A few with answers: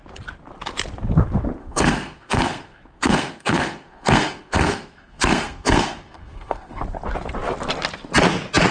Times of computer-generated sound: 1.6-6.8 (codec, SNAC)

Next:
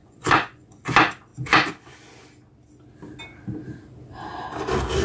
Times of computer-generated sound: 0.0-0.8 (vocoder, Vocos)

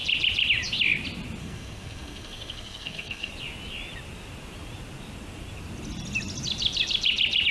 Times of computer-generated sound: 1.4-3.3 (codec, SNAC)

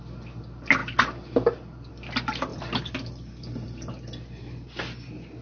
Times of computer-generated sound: 2.5-3.9 (vocoder, BigVGAN v2)

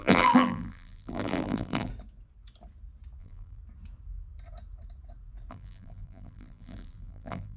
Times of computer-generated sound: 0.0-1.9 (vocoder, BigVGAN v2); 3.2-3.6; 5.5-7.6